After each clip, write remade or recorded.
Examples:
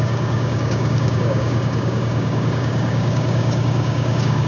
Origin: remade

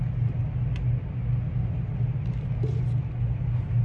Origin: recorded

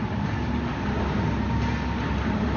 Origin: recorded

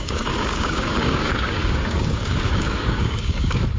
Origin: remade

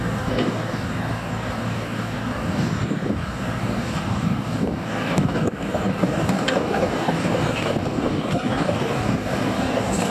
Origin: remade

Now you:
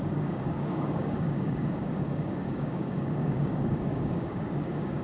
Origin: remade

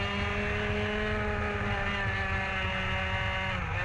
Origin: recorded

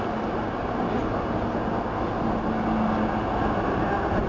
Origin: recorded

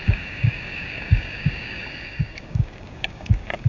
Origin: remade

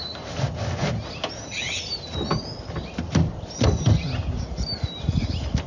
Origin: recorded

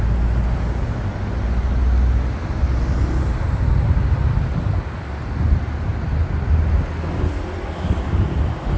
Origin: recorded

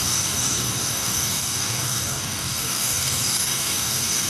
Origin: remade